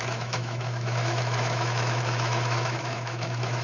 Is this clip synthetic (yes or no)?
yes